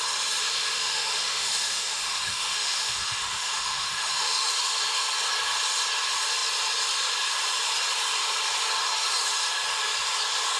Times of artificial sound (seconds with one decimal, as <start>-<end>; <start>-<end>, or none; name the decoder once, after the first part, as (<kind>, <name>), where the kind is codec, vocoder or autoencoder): 0.4-4.5 (autoencoder, DAC-VAE)